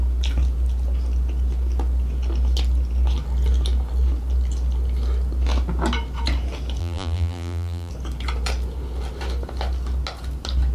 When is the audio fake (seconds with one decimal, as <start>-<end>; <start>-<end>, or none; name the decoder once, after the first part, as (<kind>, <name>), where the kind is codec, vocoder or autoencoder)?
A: 6.8-7.9 (vocoder, BigVGAN v2)